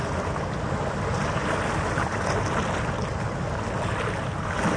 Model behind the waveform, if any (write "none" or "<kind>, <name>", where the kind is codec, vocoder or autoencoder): none